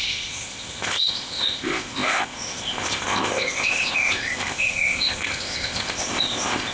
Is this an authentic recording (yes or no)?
no